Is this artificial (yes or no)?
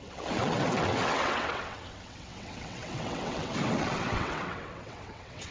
yes